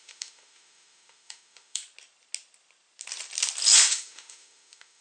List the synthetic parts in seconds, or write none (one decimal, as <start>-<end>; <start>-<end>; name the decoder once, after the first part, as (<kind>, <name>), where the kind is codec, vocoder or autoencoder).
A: 0.0-1.8 (autoencoder, DAC-VAE); 3.8-5.0